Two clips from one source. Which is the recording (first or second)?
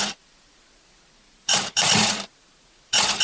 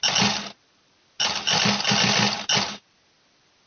second